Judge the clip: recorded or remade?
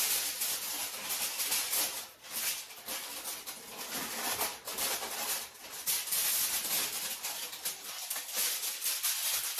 recorded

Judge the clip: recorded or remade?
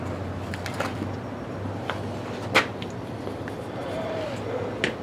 recorded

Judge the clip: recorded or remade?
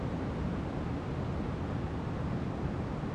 recorded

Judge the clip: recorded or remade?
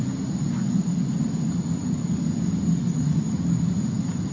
recorded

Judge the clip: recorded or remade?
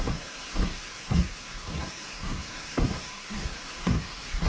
remade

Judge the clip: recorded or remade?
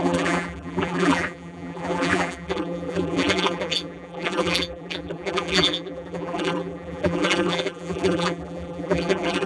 remade